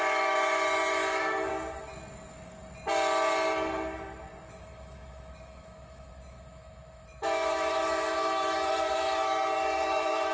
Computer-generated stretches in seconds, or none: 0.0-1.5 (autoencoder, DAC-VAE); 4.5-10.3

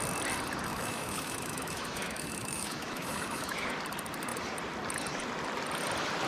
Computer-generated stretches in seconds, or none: 0.7-3.7 (autoencoder, DAC-VAE)